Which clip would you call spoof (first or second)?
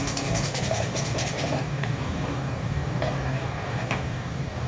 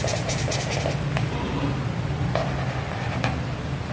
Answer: first